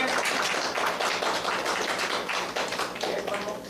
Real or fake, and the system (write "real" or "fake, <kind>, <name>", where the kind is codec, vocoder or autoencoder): real